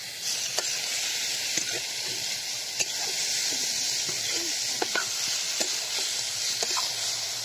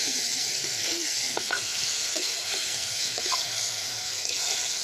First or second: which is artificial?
second